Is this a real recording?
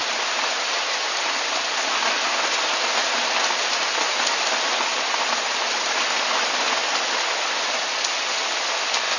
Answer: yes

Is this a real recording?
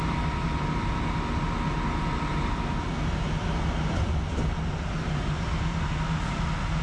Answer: yes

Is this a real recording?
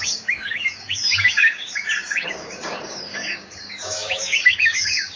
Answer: no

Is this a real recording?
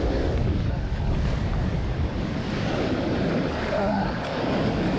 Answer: no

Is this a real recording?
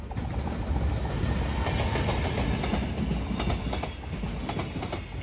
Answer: yes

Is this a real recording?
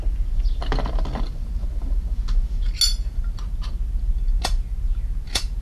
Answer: yes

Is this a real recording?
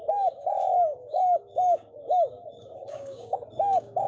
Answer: no